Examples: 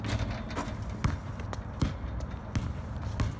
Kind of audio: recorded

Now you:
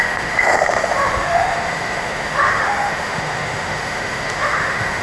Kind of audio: remade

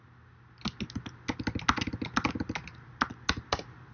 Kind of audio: recorded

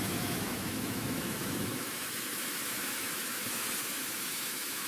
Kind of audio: remade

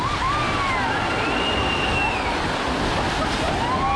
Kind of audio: recorded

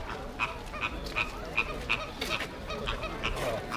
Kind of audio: recorded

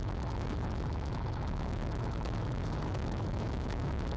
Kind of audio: remade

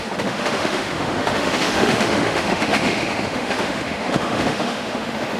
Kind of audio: remade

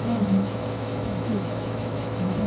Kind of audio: remade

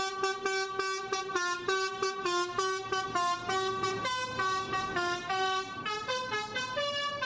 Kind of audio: recorded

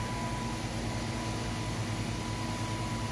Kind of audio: recorded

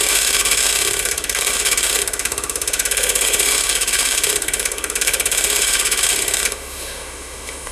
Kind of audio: remade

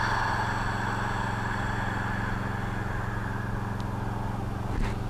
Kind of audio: recorded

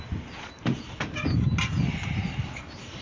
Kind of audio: recorded